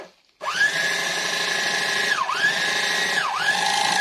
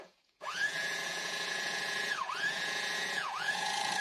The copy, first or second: second